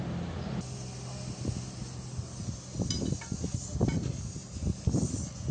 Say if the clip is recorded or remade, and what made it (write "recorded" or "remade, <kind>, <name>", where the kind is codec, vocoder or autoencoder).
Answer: recorded